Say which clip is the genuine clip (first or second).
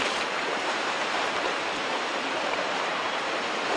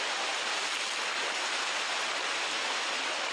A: second